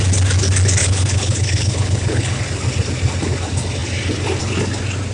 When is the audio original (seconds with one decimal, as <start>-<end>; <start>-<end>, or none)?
0.0-0.8; 2.4-5.1